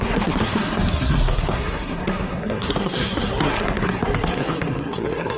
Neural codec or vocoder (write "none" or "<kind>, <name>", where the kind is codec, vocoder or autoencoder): codec, SNAC